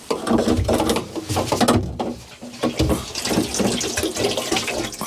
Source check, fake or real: real